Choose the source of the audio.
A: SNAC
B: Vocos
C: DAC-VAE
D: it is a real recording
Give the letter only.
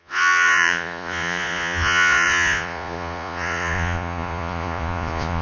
B